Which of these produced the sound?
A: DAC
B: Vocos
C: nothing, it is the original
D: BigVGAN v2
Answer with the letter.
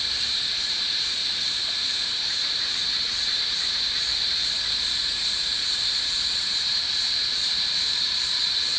D